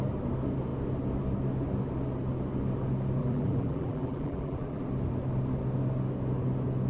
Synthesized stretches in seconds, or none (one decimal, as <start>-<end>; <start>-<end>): 3.2-4.8